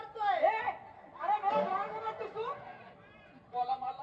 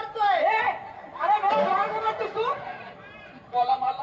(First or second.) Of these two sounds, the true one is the first